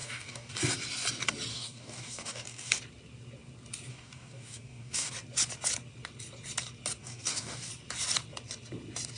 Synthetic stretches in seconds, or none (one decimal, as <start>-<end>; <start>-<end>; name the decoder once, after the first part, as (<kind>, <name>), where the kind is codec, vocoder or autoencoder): 0.0-0.6 (codec, DAC); 1.5-2.8; 3.9-5.1; 7.0-7.7